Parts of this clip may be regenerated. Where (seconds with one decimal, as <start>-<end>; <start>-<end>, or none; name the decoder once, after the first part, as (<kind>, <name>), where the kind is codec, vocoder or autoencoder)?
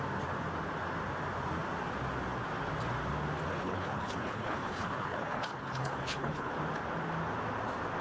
3.5-6.5 (codec, HILCodec)